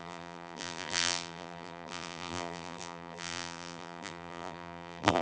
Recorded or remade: remade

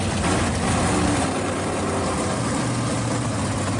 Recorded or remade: recorded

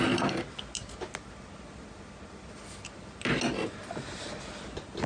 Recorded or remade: recorded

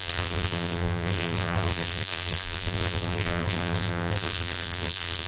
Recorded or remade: remade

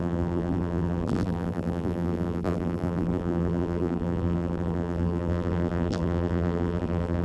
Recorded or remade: remade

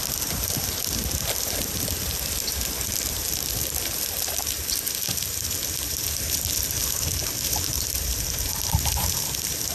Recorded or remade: remade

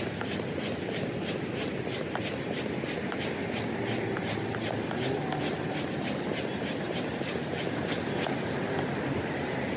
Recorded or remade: recorded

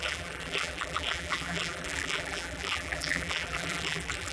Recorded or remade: remade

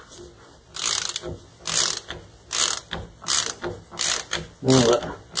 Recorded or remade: recorded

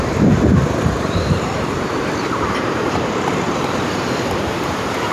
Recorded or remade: remade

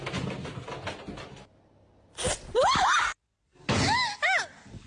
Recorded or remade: recorded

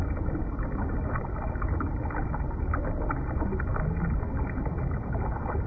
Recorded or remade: recorded